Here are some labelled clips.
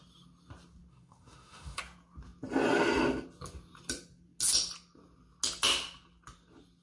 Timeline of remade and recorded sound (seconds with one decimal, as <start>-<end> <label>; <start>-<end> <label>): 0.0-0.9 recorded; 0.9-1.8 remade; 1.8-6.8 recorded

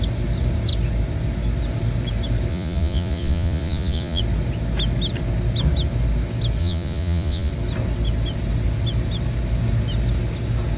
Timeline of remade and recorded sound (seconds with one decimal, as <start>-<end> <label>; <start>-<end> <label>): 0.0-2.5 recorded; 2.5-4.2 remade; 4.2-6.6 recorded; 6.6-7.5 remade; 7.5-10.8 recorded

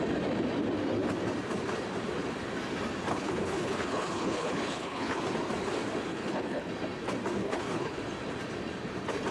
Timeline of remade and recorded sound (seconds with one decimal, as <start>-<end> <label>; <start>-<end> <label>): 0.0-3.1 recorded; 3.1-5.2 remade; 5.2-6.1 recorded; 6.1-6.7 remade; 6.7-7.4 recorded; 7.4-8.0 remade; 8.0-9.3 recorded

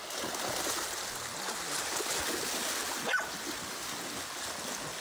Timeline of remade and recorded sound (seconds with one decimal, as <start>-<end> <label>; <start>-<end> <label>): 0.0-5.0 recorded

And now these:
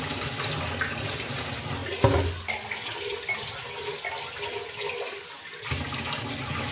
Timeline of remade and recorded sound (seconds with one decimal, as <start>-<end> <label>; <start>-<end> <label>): 0.0-6.7 recorded

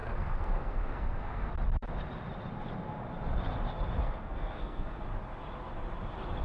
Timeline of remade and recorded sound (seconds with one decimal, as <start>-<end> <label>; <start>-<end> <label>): 0.0-1.5 remade; 1.5-4.0 recorded; 4.0-5.0 remade; 5.0-6.4 recorded